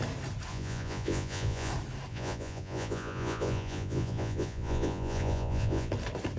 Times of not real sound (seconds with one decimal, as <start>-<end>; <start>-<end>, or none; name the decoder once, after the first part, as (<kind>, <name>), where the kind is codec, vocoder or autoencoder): 0.5-1.7 (vocoder, Vocos); 2.1-5.9